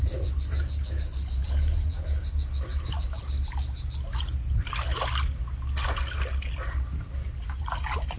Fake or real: real